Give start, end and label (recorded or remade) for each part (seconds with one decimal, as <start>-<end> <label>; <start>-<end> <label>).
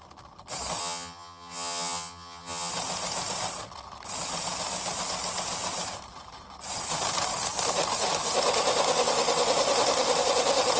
0.0-0.8 recorded; 0.8-2.7 remade; 2.7-10.8 recorded